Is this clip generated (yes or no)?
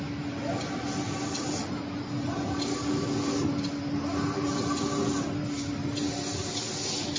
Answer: no